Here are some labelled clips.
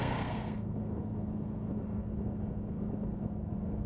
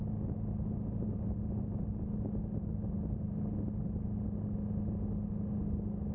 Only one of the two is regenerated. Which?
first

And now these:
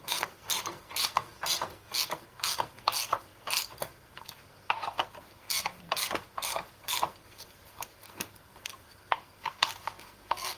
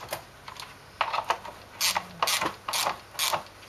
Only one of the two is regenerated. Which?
first